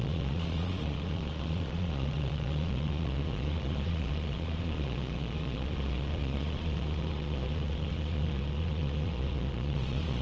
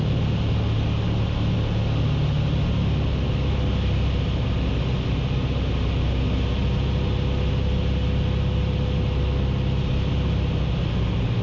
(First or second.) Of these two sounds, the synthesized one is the first